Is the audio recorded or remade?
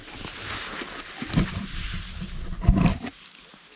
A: recorded